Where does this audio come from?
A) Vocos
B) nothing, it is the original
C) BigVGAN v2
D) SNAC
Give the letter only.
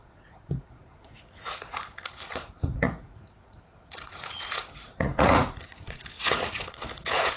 A